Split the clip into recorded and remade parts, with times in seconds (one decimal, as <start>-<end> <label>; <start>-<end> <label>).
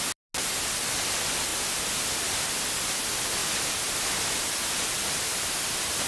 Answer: 0.0-6.1 recorded